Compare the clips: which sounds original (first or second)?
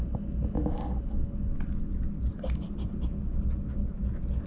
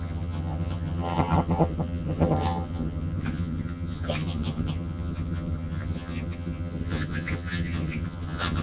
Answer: first